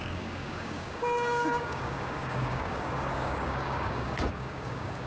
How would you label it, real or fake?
fake